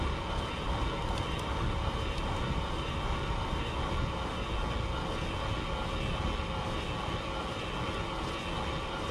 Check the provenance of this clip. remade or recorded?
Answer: recorded